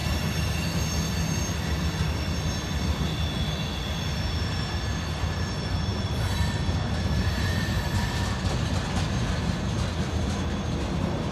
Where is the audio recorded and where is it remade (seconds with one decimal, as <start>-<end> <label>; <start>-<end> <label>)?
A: 0.0-11.3 recorded